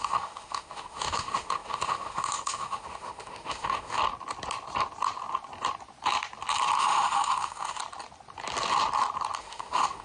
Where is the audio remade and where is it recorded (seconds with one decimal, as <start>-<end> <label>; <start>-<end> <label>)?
0.0-4.0 remade; 4.0-6.8 recorded; 6.8-7.8 remade; 7.8-9.4 recorded; 9.4-10.0 remade